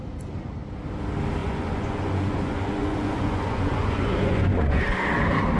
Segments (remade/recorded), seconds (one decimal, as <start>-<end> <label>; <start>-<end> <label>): 0.0-1.4 recorded; 1.4-4.8 remade; 4.8-5.6 recorded